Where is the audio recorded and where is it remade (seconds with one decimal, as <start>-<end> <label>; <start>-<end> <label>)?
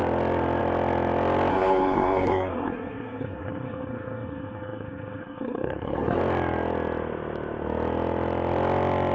0.0-1.5 recorded; 1.5-6.2 remade; 6.2-9.1 recorded